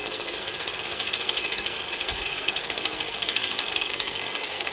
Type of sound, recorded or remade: remade